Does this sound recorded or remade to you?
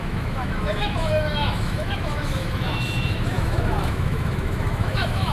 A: remade